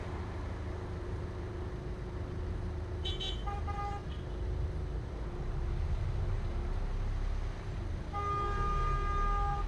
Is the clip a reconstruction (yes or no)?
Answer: no